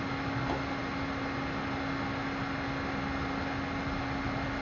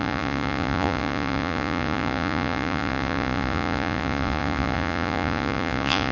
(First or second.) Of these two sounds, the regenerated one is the second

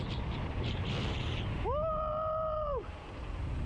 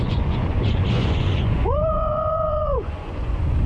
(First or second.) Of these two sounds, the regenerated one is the second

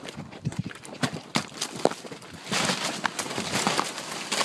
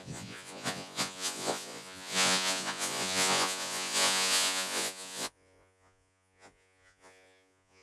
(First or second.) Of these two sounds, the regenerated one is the second